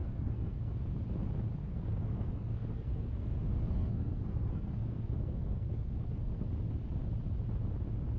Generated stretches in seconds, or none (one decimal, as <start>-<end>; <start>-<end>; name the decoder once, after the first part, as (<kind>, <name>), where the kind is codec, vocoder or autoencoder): 0.0-0.7 (codec, SNAC); 1.6-6.5